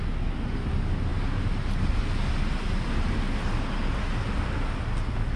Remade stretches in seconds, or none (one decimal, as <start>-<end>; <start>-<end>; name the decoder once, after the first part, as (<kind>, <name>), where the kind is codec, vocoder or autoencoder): none